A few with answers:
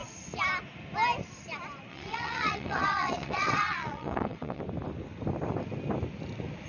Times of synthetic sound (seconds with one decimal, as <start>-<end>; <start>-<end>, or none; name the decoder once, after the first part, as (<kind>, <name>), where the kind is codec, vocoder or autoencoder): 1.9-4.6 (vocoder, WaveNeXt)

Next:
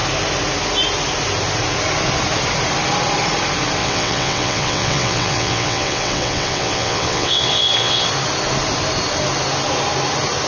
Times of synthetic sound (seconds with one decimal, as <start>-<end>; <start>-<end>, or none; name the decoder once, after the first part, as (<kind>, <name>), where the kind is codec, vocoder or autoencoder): 3.8-8.1 (vocoder, WaveNeXt)

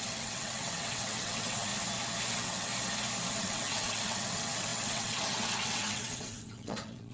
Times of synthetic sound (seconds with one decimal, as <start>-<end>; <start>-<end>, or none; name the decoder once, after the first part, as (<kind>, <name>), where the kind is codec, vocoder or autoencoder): 0.0-1.7 (vocoder, WaveNeXt); 2.3-2.7; 3.4-7.1

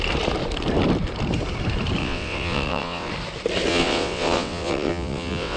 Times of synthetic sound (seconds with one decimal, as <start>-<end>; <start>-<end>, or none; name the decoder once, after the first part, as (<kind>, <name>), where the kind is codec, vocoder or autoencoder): 2.0-3.1 (vocoder, WaveNeXt); 3.7-5.6